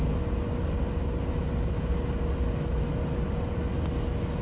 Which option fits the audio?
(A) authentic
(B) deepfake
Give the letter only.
A